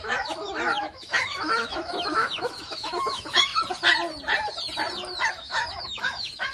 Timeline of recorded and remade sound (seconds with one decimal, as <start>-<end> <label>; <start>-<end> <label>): 0.0-3.5 remade; 3.5-5.3 recorded; 5.3-6.5 remade